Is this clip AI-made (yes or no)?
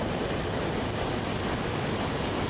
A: no